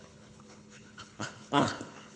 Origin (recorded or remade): remade